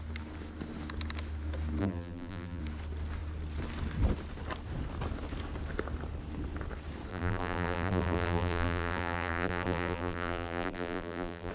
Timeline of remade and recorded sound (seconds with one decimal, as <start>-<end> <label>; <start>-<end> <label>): 0.0-1.8 recorded; 1.8-2.6 remade; 2.6-7.1 recorded; 7.1-11.5 remade